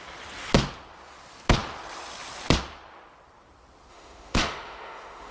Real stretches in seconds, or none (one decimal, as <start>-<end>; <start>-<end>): 0.0-3.9

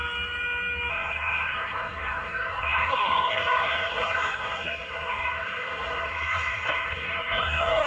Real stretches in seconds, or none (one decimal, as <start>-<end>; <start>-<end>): 0.0-0.9

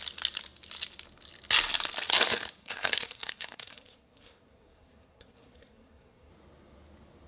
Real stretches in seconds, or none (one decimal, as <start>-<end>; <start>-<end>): 0.0-2.6; 6.3-7.3

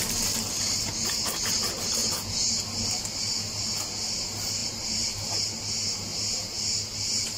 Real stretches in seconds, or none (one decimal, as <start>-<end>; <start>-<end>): 0.0-2.0; 2.5-7.4

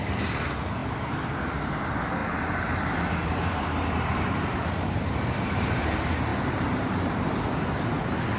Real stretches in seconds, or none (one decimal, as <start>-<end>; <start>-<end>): 0.0-2.2; 5.8-6.3; 7.0-8.4